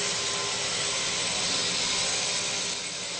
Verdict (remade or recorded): recorded